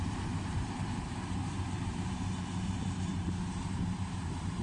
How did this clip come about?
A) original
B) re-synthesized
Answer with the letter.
B